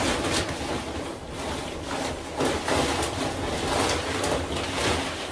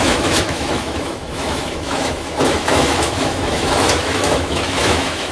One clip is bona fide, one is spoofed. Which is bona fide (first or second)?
first